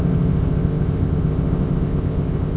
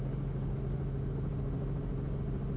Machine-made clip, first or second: first